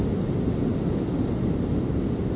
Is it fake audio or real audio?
real